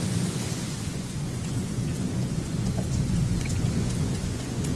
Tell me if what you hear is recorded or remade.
remade